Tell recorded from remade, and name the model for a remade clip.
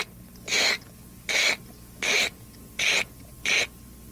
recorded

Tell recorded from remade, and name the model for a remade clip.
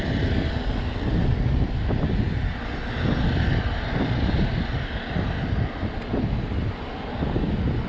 recorded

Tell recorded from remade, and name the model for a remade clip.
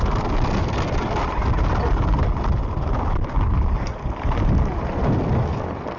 recorded